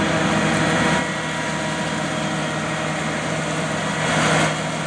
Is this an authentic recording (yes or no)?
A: yes